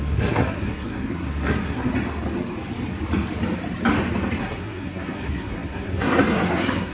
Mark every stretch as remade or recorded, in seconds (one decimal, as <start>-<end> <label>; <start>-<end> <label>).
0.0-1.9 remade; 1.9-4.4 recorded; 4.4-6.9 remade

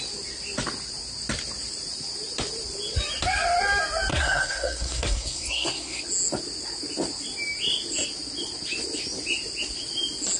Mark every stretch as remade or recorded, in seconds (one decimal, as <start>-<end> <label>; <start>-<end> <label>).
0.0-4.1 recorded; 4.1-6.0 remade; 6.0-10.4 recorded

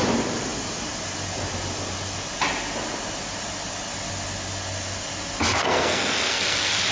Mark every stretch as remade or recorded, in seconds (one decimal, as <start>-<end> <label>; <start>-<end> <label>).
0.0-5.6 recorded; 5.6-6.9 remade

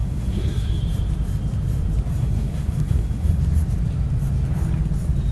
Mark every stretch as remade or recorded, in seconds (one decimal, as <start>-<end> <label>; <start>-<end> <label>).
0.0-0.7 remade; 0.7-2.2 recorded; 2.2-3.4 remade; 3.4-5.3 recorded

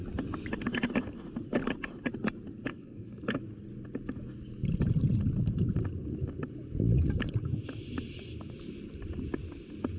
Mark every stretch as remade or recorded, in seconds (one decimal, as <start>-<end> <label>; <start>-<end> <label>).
0.0-2.7 recorded; 2.7-3.4 remade; 3.4-10.0 recorded